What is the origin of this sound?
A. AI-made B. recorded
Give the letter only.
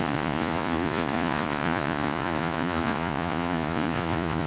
A